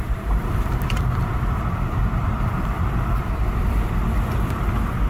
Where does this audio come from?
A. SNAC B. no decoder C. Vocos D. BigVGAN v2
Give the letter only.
D